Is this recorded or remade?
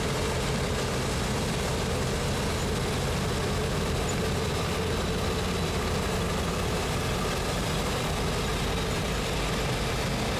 recorded